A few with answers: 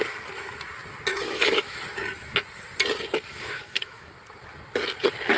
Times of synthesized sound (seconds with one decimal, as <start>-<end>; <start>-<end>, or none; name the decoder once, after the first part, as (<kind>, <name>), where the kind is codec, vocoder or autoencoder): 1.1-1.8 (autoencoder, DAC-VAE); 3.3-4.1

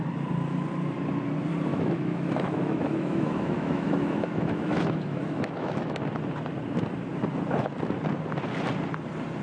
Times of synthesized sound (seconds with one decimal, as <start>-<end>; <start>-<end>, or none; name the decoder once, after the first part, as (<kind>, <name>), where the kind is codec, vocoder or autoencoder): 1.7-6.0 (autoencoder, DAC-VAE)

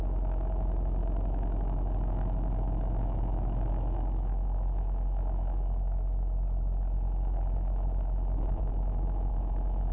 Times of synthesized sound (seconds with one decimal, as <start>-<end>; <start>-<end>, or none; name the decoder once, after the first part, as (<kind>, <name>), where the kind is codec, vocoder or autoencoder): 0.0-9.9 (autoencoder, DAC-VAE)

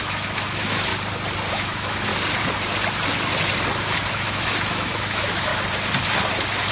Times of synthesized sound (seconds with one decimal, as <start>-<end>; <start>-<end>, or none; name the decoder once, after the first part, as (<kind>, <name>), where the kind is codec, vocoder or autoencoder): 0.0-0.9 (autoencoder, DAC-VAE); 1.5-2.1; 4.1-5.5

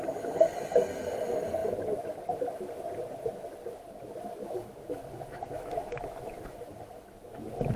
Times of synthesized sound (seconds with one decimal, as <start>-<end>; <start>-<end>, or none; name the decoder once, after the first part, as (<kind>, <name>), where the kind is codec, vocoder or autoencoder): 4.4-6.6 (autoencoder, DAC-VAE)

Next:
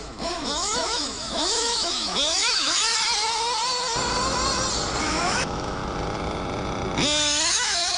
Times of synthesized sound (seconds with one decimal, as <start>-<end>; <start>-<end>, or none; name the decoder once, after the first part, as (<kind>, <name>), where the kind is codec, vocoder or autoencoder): 0.0-2.9 (autoencoder, DAC-VAE); 5.0-5.8; 7.5-8.0

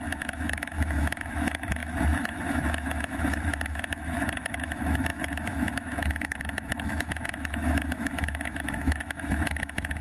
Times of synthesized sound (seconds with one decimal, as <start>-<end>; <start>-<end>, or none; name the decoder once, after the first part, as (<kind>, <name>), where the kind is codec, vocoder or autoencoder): 0.0-10.0 (autoencoder, DAC-VAE)